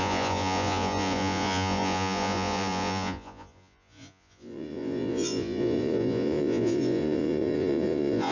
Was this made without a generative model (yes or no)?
no